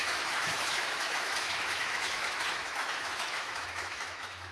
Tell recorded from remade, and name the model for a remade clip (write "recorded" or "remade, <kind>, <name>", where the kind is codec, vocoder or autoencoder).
remade, autoencoder, DAC-VAE